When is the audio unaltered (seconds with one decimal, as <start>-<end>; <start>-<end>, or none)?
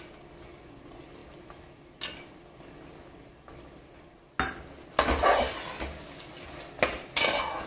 0.0-7.7